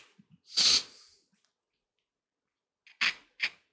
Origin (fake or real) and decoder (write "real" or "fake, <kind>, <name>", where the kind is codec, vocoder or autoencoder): real